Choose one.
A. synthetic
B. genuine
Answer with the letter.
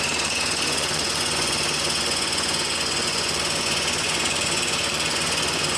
A